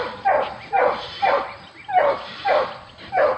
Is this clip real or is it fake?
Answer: real